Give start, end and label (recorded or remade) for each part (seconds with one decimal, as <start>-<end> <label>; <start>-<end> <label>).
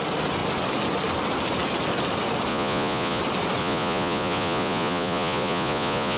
0.0-2.5 recorded; 2.5-3.2 remade; 3.2-3.6 recorded; 3.6-6.2 remade